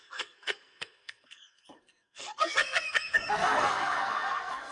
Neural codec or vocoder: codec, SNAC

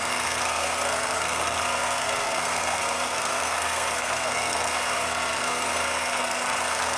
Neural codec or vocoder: codec, SNAC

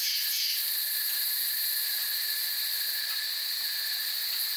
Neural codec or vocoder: none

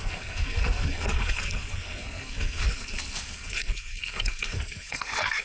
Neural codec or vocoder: codec, SNAC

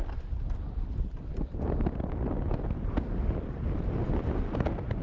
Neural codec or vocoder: none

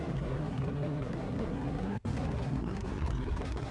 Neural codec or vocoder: codec, SNAC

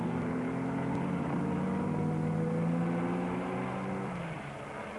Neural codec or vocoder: none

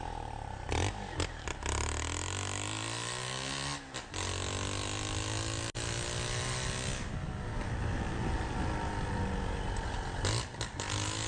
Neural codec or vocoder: none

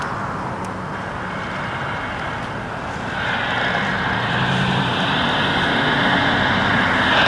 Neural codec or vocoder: none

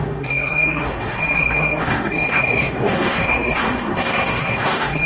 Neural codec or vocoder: codec, SNAC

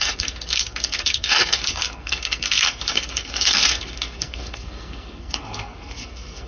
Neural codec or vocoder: codec, SNAC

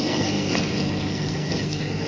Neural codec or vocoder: codec, SNAC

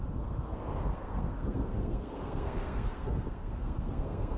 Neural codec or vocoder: codec, SNAC